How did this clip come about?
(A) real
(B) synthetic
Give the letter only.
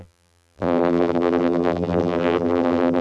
B